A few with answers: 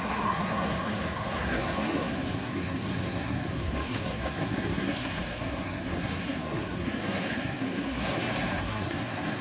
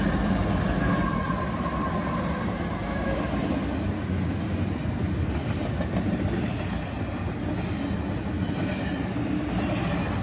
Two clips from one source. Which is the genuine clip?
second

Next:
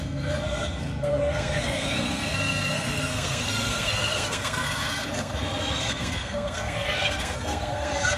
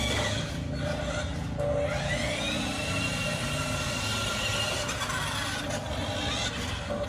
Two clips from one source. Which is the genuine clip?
second